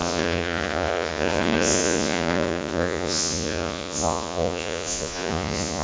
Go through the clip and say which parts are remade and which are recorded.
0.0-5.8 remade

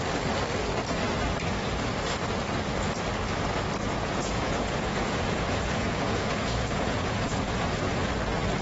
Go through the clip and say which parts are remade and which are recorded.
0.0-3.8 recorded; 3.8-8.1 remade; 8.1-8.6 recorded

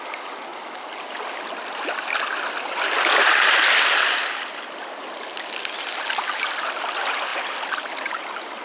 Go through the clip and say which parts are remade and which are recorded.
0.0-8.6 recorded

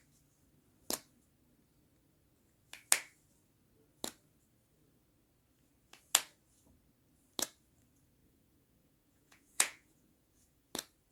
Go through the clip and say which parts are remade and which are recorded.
0.0-8.2 recorded; 8.2-10.7 remade; 10.7-11.1 recorded

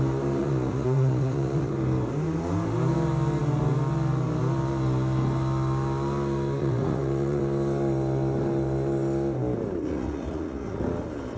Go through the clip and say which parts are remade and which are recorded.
0.0-0.4 recorded; 0.4-1.7 remade; 1.7-6.6 recorded; 6.6-7.4 remade; 7.4-9.8 recorded; 9.8-10.8 remade; 10.8-11.4 recorded